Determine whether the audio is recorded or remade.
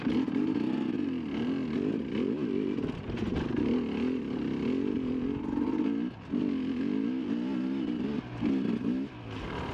recorded